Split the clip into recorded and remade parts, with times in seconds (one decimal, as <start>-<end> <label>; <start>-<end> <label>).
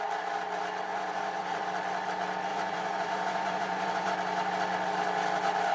0.0-0.9 recorded; 0.9-1.6 remade; 1.6-2.5 recorded; 2.5-4.1 remade; 4.1-5.7 recorded